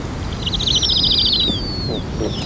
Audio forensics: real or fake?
real